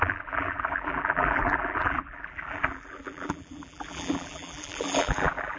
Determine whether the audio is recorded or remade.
remade